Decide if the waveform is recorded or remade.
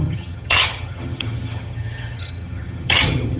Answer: remade